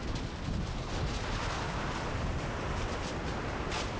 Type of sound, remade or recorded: recorded